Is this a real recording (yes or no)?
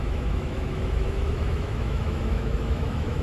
no